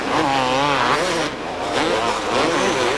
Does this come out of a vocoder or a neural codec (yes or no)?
no